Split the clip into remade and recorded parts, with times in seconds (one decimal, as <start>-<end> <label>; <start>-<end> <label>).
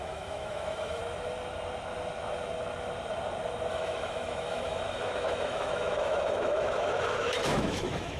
0.0-1.0 remade; 1.0-3.7 recorded; 3.7-8.2 remade